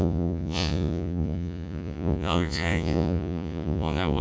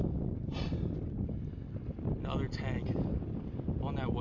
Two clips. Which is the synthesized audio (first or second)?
first